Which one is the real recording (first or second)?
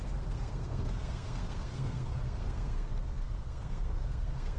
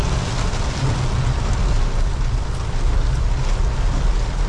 second